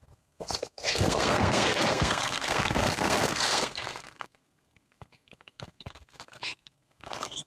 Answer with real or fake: fake